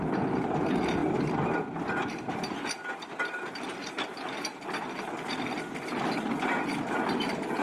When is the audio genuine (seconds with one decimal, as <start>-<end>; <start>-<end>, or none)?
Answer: 0.0-7.6